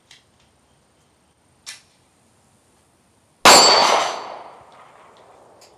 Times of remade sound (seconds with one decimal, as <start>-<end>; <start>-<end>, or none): none